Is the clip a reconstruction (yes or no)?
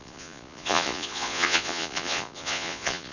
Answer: yes